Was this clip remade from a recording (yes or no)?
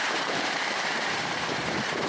yes